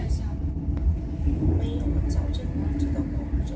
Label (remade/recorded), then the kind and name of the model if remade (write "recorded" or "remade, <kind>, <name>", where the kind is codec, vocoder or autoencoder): recorded